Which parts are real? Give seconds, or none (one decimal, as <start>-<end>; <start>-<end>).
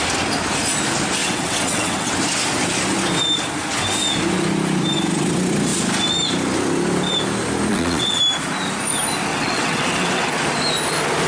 0.0-1.2; 2.1-7.7; 8.2-9.3; 10.3-11.3